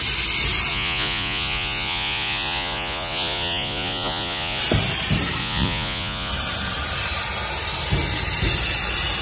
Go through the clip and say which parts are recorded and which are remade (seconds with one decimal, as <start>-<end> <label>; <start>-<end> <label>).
0.0-0.7 recorded; 0.7-4.6 remade; 4.6-5.4 recorded; 5.4-6.3 remade; 6.3-9.2 recorded